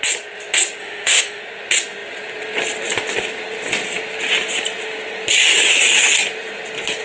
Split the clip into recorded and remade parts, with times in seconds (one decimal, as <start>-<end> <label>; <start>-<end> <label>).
0.0-0.8 recorded; 0.8-1.4 remade; 1.4-7.0 recorded